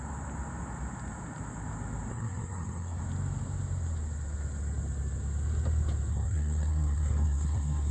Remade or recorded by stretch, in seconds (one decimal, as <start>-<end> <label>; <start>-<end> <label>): 0.0-2.1 recorded; 2.1-3.0 remade; 3.0-6.1 recorded; 6.1-7.9 remade